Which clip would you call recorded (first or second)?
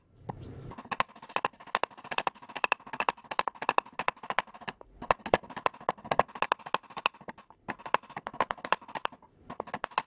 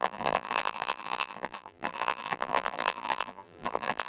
first